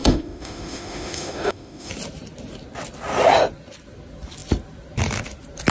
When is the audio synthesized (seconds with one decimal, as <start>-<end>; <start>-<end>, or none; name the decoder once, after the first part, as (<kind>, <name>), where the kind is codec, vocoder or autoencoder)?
0.0-1.9 (autoencoder, DAC-VAE)